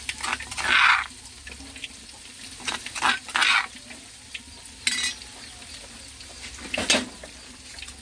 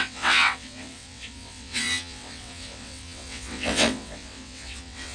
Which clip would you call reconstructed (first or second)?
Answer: second